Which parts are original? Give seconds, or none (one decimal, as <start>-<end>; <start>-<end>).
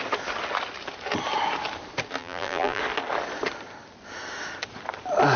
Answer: 0.0-2.2; 2.8-5.4